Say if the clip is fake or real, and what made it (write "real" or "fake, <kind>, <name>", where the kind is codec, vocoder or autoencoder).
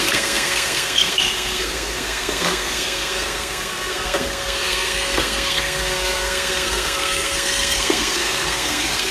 fake, codec, SNAC